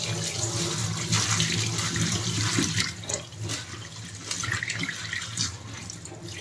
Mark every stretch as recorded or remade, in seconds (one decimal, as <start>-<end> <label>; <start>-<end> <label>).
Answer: 0.0-6.4 recorded